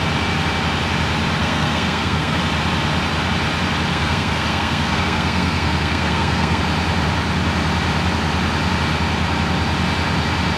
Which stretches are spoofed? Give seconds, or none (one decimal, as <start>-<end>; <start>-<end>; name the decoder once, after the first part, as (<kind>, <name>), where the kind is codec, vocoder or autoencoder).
1.4-2.4 (codec, SNAC); 3.9-6.6